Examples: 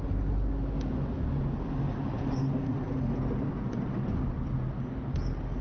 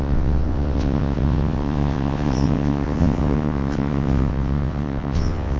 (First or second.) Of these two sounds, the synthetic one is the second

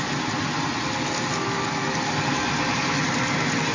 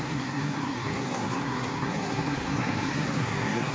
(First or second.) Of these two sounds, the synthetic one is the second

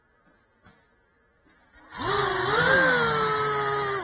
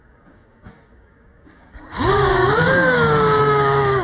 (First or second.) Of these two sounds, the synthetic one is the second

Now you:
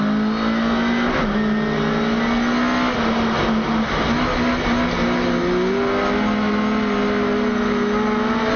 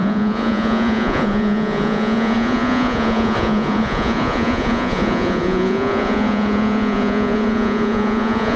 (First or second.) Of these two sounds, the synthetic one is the second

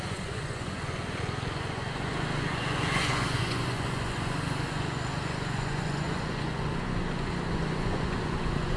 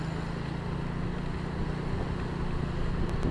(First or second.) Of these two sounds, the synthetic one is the first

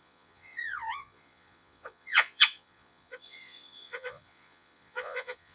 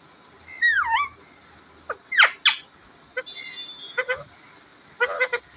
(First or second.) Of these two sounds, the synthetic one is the first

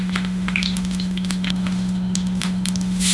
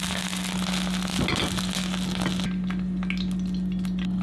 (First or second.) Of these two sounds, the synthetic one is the first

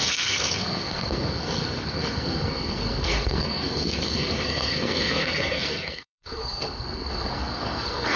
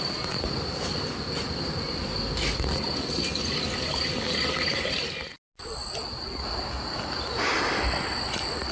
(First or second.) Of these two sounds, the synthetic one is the first